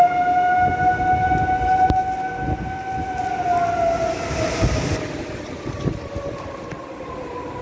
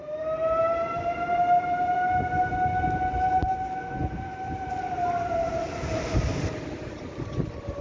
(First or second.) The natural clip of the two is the first